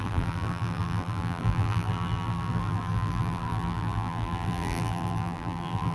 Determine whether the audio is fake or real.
fake